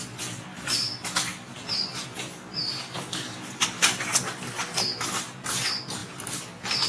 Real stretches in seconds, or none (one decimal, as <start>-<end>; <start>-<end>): 0.0-6.9

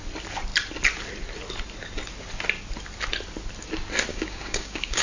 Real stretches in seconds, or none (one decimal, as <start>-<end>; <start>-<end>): 0.0-4.1